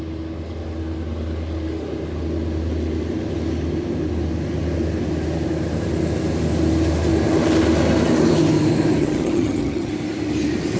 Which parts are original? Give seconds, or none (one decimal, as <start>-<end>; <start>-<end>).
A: 0.0-9.0; 9.9-10.8

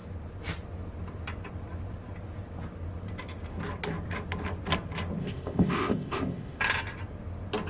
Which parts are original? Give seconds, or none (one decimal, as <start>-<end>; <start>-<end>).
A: 0.0-5.2; 6.6-7.7

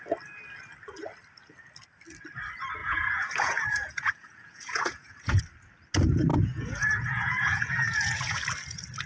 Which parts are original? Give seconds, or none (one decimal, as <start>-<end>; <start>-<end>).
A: 0.0-2.8; 5.4-6.3; 8.4-9.1

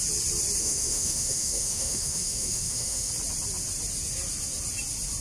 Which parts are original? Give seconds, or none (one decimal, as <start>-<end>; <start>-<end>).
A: 0.0-0.6; 3.1-5.2

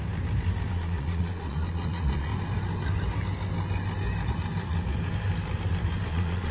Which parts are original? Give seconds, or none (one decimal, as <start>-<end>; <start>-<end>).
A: 0.0-0.7; 2.3-6.1